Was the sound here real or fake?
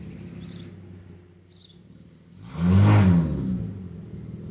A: real